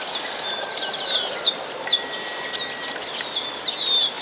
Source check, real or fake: real